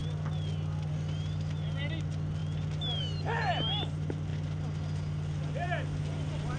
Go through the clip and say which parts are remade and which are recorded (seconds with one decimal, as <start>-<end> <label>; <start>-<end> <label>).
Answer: 0.0-6.6 recorded